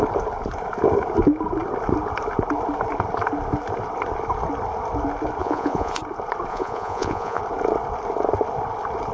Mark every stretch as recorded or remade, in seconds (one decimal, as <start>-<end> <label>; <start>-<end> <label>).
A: 0.0-5.4 recorded; 5.4-6.0 remade; 6.0-6.5 recorded; 6.5-7.4 remade; 7.4-9.1 recorded